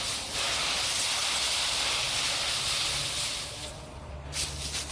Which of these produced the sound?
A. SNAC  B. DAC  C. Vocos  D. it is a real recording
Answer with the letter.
D